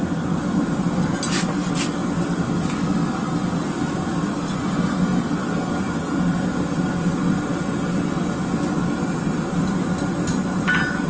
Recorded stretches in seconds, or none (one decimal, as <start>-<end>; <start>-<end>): 0.0-11.1